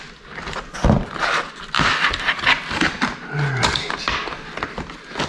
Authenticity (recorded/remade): recorded